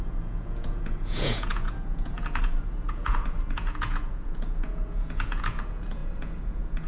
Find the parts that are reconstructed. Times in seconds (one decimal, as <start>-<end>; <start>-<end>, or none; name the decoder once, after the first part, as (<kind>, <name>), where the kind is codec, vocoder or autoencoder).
0.0-6.9 (vocoder, Vocos)